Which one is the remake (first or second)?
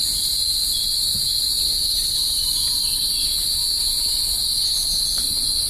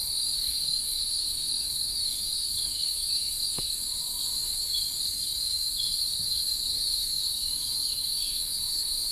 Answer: second